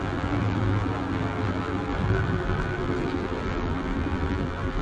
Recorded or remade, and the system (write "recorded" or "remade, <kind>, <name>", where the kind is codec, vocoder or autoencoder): remade, vocoder, BigVGAN v2